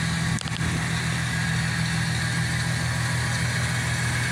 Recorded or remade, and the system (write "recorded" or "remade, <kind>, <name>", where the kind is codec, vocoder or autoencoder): recorded